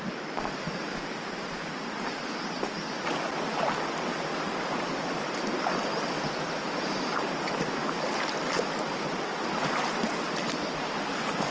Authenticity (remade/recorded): recorded